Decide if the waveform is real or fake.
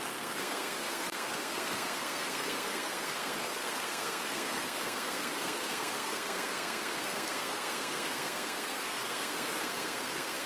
fake